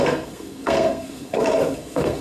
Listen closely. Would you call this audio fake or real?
fake